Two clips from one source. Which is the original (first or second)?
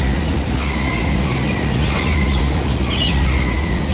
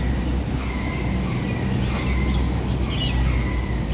second